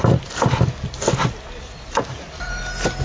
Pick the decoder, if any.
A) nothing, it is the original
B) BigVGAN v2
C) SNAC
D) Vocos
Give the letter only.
A